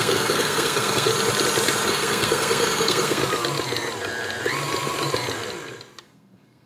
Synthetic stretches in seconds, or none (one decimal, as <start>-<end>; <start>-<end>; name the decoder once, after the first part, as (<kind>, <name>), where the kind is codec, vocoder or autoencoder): 0.0-1.1 (codec, SNAC); 1.9-3.2; 6.0-6.7